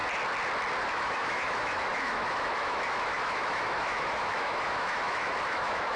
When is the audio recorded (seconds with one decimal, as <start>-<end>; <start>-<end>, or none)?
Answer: 0.0-0.9